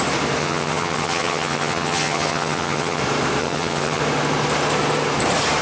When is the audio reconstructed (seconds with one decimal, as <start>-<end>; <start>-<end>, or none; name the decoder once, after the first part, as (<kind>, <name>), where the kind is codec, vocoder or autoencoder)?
0.4-3.0 (vocoder, HiFi-GAN); 3.4-4.0